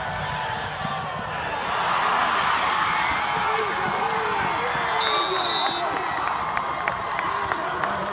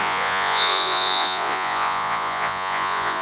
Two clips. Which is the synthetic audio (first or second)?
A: second